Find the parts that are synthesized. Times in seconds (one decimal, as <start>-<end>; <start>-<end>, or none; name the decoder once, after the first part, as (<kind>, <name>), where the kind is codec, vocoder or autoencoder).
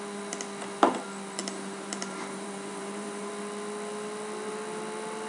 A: 1.4-3.3 (vocoder, BigVGAN v2)